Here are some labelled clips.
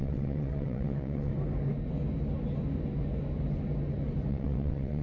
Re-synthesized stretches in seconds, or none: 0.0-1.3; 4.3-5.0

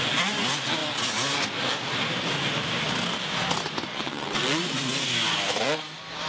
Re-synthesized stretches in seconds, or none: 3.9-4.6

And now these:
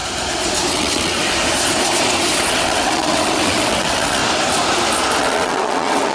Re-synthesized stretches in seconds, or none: 0.7-1.2; 2.5-4.2; 5.2-6.1